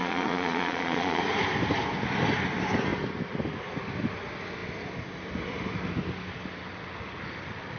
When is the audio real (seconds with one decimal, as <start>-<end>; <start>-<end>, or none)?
1.2-7.8